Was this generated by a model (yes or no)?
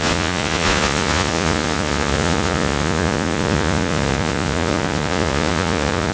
yes